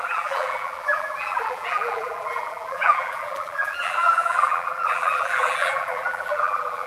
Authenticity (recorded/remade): remade